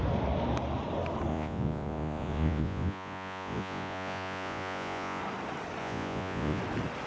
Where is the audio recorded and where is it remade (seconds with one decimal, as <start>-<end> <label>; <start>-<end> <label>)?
0.0-1.3 recorded; 1.3-5.2 remade; 5.2-5.8 recorded; 5.8-6.6 remade; 6.6-7.1 recorded